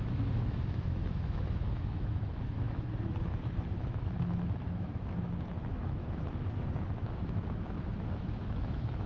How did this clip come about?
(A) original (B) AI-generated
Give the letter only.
B